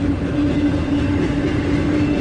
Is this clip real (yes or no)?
yes